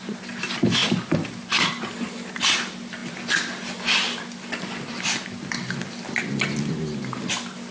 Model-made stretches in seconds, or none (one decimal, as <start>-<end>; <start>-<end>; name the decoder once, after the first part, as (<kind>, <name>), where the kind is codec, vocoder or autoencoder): none